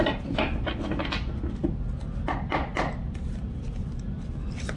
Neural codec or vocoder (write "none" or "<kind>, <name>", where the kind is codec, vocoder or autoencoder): none